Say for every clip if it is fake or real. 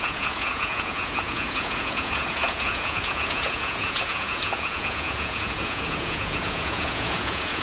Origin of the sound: fake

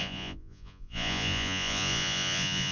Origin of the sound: fake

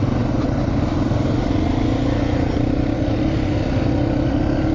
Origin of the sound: real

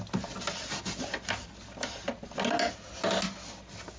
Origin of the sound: real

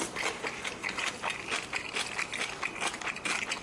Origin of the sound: real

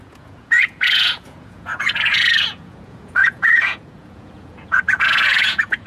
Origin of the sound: fake